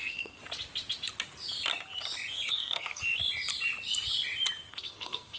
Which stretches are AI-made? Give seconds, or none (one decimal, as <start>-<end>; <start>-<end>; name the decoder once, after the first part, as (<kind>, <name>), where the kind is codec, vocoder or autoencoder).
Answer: 0.0-0.4 (codec, SNAC); 2.5-3.0; 4.7-5.4